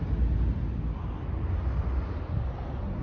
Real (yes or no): yes